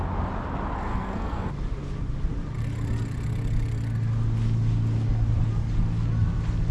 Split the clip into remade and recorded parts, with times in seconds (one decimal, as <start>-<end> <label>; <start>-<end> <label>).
0.0-0.9 recorded; 0.9-1.5 remade; 1.5-6.7 recorded